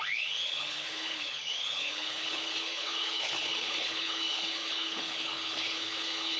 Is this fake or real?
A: fake